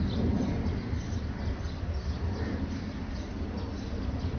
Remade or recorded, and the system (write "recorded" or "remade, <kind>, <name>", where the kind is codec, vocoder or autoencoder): recorded